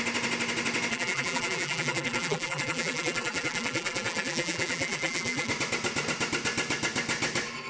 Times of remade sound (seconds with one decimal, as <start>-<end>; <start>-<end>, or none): 0.9-5.5